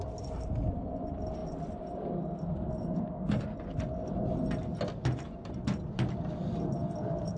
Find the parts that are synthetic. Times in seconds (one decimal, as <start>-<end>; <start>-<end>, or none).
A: none